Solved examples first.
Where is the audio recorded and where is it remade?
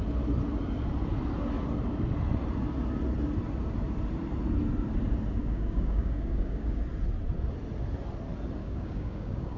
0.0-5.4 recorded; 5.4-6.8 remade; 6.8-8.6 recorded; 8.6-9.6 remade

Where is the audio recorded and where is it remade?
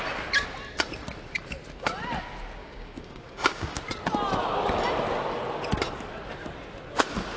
0.0-2.6 recorded; 2.6-3.8 remade; 3.8-7.4 recorded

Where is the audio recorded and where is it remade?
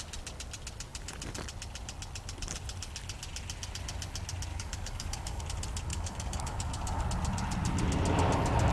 0.0-4.5 recorded; 4.5-5.4 remade; 5.4-5.9 recorded; 5.9-7.0 remade; 7.0-8.7 recorded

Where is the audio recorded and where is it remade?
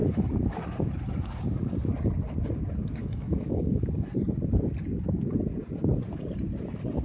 0.0-3.0 recorded; 3.0-4.0 remade; 4.0-7.0 recorded